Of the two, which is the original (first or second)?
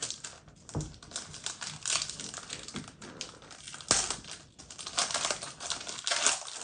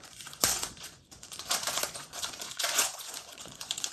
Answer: first